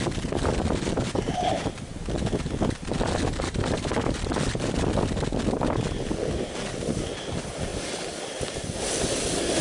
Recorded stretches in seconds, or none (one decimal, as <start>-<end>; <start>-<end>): 0.0-9.6